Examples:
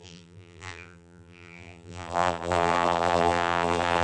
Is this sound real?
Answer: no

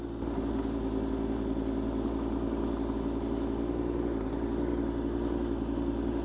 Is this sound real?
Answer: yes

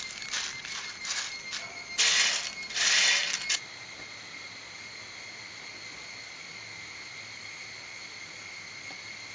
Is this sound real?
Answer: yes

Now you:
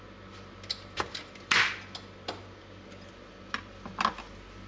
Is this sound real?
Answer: yes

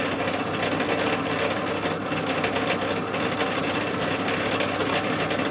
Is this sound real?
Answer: yes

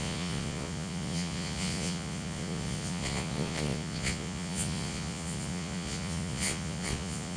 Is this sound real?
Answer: no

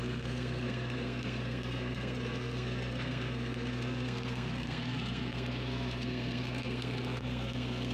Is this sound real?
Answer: no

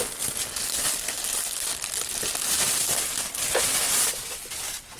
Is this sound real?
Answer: yes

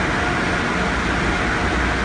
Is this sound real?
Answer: yes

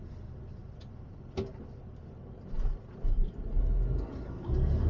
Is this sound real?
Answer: yes